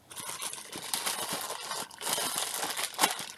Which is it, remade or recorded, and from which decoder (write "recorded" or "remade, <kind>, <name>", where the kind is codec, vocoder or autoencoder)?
recorded